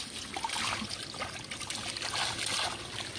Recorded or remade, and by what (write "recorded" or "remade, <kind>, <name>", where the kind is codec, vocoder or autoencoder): recorded